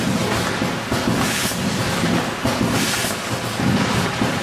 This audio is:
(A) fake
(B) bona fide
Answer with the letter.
B